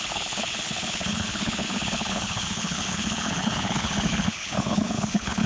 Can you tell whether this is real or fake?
fake